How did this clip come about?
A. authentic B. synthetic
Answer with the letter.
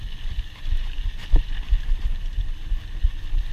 A